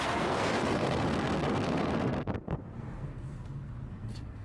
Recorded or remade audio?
remade